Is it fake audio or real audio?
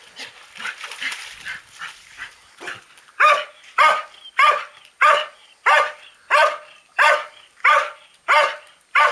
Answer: real